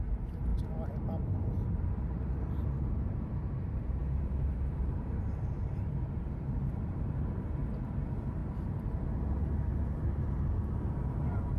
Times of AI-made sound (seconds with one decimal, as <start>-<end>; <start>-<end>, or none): 0.0-0.5; 1.7-8.4; 9.4-11.6